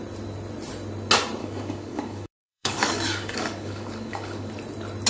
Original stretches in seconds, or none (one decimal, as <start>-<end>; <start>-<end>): 0.0-1.4; 4.5-5.1